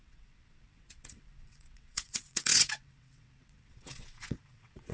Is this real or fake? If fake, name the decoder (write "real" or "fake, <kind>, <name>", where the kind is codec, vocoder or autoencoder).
fake, vocoder, WaveNeXt